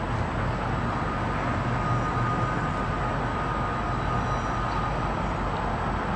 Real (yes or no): yes